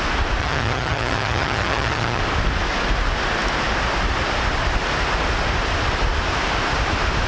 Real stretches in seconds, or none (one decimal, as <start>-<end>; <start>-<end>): 0.0-0.4; 2.2-7.3

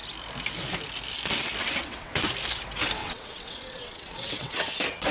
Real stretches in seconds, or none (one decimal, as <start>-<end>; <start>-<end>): 0.0-1.6; 2.3-3.0; 4.6-5.1

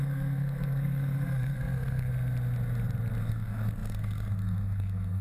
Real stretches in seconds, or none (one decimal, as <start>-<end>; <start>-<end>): 2.1-3.2